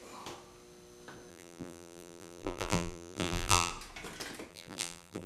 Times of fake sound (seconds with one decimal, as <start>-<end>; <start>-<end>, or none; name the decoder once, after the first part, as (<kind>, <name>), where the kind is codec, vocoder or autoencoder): 1.3-3.7 (vocoder, BigVGAN v2); 4.5-5.3